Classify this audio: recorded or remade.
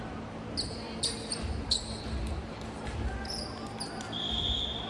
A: recorded